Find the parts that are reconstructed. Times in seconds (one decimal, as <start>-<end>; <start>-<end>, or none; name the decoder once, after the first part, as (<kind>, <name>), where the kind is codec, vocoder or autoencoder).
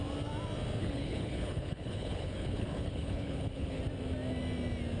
0.8-3.8 (codec, HILCodec)